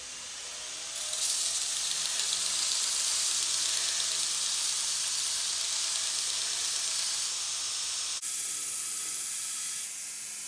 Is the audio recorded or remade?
recorded